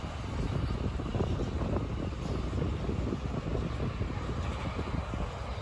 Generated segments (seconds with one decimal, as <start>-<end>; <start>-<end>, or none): none